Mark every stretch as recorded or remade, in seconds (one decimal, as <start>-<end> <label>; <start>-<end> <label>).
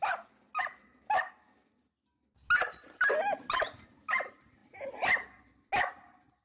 0.0-6.4 recorded